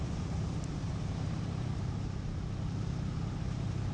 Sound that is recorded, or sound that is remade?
remade